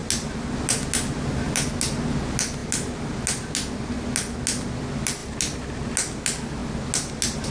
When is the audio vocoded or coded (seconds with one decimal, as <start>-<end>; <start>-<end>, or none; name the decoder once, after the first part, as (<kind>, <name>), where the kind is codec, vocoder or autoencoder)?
none